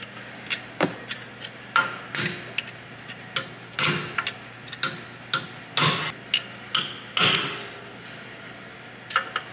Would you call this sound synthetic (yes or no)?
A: no